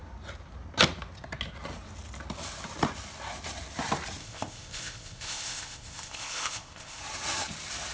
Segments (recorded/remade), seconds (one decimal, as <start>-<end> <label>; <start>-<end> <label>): 0.0-4.2 recorded; 4.2-7.0 remade; 7.0-7.9 recorded